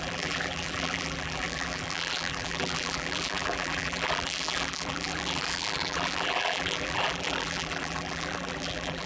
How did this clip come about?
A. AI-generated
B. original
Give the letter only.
A